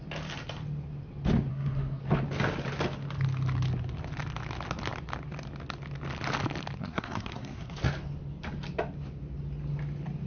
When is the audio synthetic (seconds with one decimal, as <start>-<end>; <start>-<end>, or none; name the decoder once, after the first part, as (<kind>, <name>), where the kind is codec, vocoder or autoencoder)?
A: 1.5-2.0 (codec, SNAC); 6.8-7.8